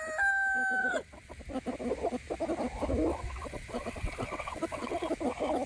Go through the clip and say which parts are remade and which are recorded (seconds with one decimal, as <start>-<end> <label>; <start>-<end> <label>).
0.0-0.8 recorded; 0.8-1.4 remade; 1.4-3.1 recorded; 3.1-5.1 remade; 5.1-5.7 recorded